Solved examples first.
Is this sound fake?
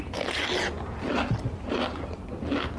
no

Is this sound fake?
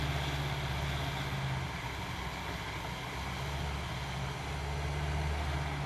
no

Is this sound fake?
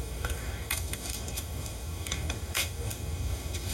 yes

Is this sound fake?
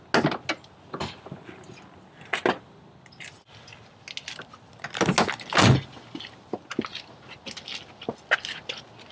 no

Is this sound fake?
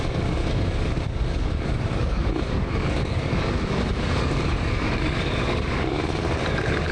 yes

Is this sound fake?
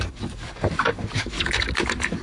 yes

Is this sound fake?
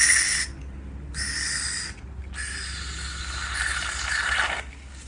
no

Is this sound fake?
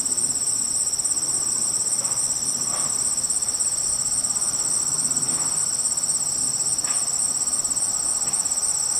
no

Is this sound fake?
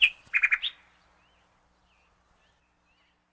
no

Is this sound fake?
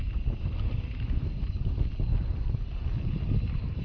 no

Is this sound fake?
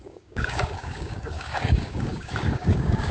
yes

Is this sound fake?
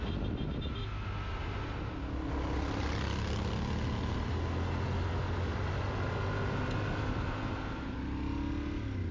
no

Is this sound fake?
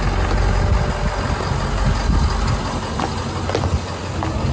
no